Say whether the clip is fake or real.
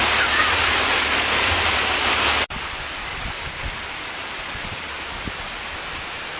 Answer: real